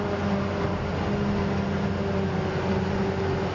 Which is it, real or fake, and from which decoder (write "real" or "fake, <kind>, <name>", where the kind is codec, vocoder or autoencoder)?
real